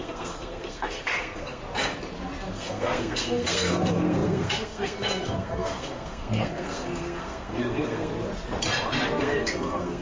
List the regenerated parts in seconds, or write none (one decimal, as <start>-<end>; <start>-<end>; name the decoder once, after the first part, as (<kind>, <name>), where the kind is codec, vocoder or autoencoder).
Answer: 0.0-1.6 (codec, SNAC); 2.5-8.1; 9.2-10.0